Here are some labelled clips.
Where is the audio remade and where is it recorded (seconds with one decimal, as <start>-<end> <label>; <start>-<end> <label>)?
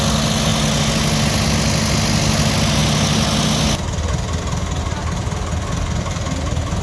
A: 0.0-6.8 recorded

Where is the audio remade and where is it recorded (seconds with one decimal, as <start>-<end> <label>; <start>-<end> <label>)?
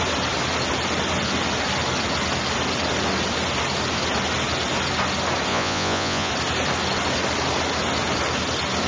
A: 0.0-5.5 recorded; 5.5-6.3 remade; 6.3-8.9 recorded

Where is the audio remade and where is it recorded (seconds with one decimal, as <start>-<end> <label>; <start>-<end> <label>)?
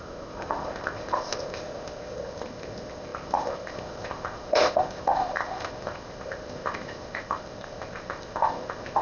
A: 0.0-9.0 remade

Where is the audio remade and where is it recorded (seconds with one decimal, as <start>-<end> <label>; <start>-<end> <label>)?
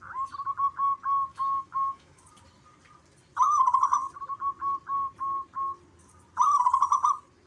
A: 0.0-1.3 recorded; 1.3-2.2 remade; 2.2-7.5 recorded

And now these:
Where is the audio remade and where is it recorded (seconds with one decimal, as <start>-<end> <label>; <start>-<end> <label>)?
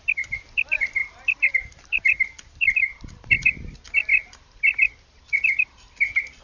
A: 0.0-6.4 recorded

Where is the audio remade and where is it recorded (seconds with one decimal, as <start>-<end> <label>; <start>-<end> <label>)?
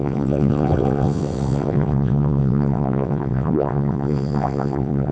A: 0.0-5.1 remade